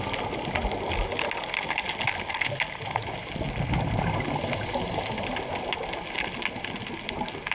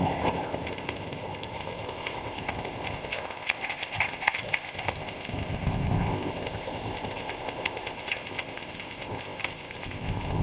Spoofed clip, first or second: second